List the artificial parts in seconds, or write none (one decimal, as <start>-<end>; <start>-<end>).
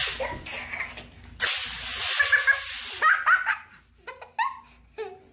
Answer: none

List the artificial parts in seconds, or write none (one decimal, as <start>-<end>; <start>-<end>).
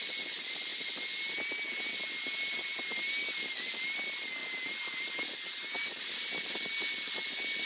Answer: none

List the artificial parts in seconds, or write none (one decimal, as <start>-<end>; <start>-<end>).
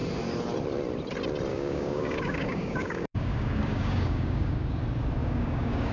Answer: 1.5-4.8; 5.2-5.9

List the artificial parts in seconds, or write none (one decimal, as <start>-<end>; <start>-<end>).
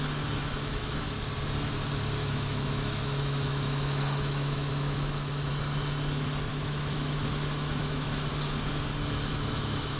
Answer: 0.4-1.0; 2.2-5.5; 6.5-8.3; 9.3-10.0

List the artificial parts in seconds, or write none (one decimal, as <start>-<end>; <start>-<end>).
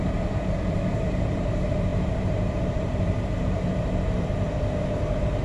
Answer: 0.0-5.4